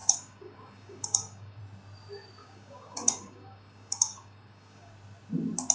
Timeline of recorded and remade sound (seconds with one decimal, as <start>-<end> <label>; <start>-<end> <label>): 0.0-1.6 remade; 1.6-2.4 recorded; 2.4-4.9 remade; 4.9-5.7 recorded